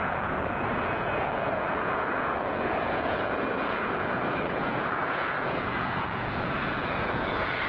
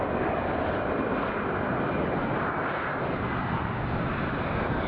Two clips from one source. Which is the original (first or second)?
second